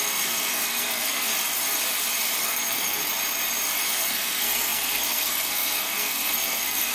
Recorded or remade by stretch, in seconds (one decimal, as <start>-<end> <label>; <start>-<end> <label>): 0.0-1.3 remade; 1.3-2.4 recorded; 2.4-3.0 remade; 3.0-3.8 recorded; 3.8-6.9 remade